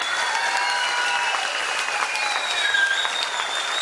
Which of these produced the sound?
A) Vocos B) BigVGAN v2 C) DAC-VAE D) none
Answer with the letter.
D